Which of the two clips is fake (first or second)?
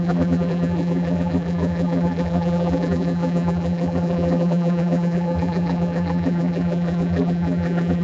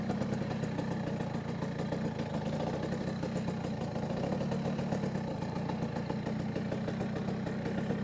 first